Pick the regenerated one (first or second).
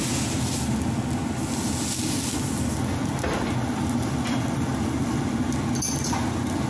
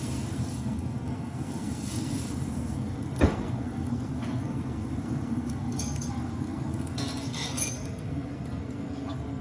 second